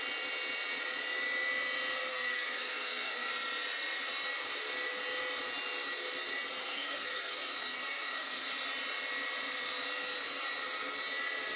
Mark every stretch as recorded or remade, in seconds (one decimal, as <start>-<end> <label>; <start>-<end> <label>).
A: 0.0-2.1 recorded; 2.1-3.3 remade; 3.3-6.6 recorded; 6.6-8.5 remade; 8.5-11.6 recorded